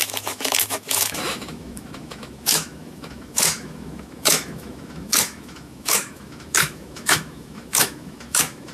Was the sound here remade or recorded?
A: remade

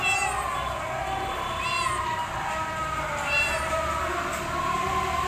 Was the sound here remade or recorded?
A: recorded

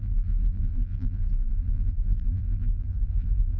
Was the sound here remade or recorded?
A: remade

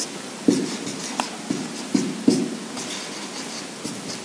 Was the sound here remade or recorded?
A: recorded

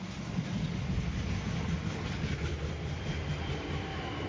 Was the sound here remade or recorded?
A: recorded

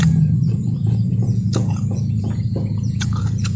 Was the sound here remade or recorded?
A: remade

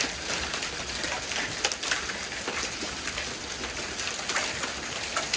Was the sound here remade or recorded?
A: recorded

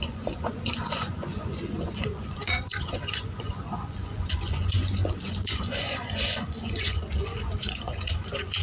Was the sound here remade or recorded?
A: remade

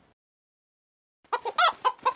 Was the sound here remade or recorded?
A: recorded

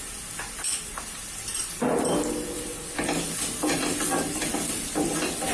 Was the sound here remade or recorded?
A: recorded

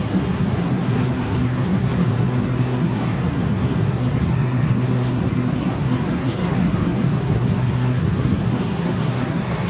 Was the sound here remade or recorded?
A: remade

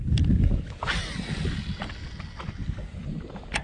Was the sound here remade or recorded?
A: recorded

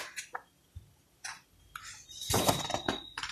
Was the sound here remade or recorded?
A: recorded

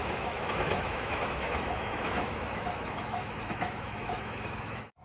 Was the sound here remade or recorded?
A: remade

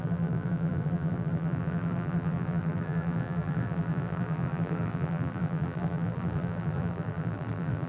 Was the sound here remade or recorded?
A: remade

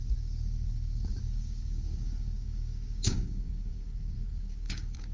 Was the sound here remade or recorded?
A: remade